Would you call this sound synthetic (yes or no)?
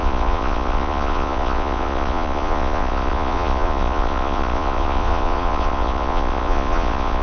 yes